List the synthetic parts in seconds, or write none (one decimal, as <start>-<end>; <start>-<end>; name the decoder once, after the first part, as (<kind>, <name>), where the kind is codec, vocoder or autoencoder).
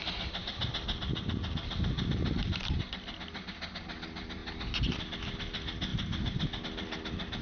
none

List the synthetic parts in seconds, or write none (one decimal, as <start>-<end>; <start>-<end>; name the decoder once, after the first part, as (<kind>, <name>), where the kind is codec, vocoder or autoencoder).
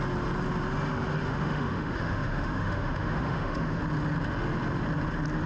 1.2-3.8 (autoencoder, DAC-VAE)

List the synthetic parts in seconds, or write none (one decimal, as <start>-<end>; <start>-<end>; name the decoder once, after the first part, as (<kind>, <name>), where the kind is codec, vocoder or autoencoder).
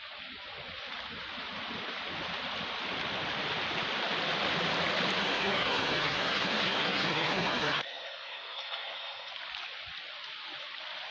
5.2-9.3 (codec, SNAC)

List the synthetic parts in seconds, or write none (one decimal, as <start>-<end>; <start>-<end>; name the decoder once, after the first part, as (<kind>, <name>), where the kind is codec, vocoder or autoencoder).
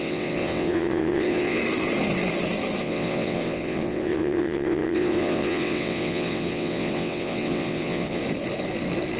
0.0-1.6 (vocoder, WaveNeXt); 2.8-8.2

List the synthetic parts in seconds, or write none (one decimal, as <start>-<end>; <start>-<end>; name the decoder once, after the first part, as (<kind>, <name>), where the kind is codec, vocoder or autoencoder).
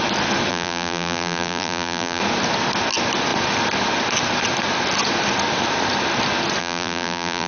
0.5-2.2 (vocoder, BigVGAN v2); 6.6-7.5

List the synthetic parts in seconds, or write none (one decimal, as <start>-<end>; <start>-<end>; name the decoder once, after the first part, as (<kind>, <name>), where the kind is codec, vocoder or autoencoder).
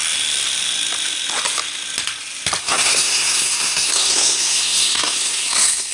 2.6-5.9 (codec, SNAC)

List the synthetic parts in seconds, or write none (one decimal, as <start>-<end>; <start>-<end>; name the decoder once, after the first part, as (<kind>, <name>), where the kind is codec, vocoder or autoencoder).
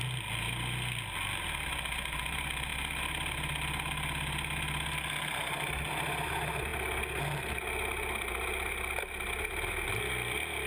none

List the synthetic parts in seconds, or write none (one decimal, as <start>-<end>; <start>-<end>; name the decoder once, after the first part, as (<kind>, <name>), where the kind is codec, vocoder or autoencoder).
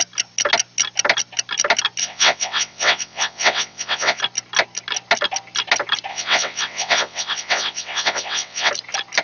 2.0-4.2 (vocoder, WaveNeXt); 6.1-8.7